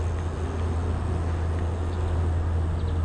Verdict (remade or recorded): recorded